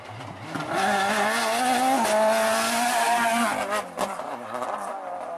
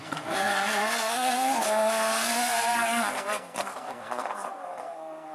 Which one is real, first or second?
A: first